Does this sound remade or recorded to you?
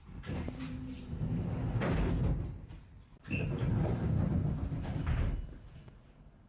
recorded